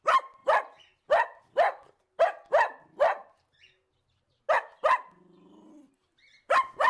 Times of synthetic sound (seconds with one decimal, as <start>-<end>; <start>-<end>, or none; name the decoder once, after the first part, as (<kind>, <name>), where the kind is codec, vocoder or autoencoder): none